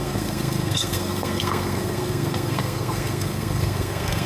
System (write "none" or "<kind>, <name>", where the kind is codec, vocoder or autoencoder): codec, SNAC